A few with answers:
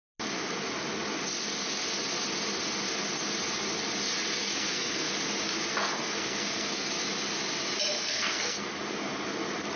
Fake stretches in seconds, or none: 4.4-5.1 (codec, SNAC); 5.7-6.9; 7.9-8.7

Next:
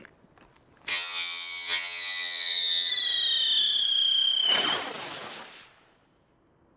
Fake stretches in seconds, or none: 0.9-2.9 (vocoder, HiFi-GAN)